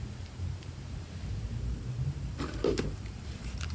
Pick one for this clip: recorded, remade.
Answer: remade